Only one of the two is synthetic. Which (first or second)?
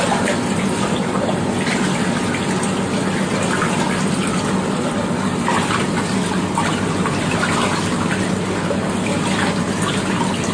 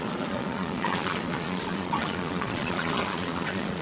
second